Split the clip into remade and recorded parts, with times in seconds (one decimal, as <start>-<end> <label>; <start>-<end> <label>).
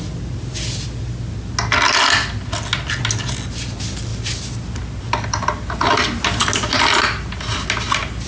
0.0-8.3 recorded